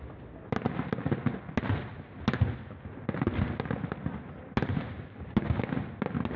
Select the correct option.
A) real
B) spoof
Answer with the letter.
A